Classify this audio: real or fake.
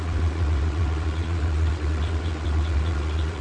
fake